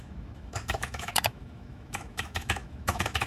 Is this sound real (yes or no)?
no